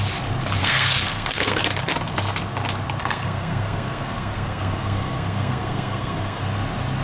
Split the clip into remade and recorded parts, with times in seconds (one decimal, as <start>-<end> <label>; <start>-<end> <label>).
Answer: 0.0-0.6 recorded; 0.6-1.6 remade; 1.6-3.0 recorded; 3.0-6.4 remade; 6.4-7.0 recorded